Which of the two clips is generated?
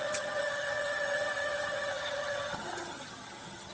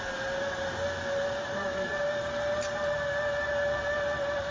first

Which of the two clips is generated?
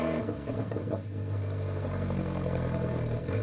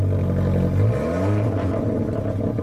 first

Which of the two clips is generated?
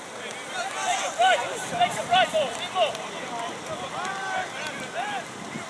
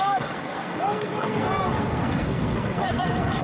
second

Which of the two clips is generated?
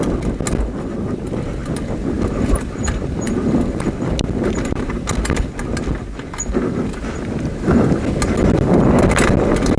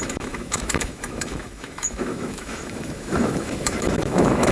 second